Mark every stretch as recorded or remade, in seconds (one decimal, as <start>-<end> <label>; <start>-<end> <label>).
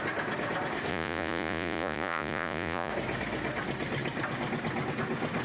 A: 0.0-0.9 recorded; 0.9-2.9 remade; 2.9-5.4 recorded